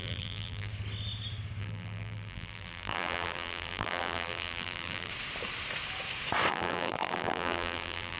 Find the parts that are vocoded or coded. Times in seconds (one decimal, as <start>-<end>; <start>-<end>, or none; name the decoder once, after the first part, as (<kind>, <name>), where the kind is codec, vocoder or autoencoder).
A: 0.0-0.7 (vocoder, BigVGAN v2); 1.6-5.1; 6.5-8.2